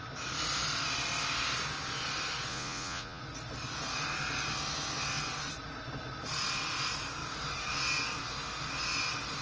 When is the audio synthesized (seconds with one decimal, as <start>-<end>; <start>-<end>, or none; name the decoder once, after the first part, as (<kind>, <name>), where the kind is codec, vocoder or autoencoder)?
2.5-3.2 (vocoder, Vocos)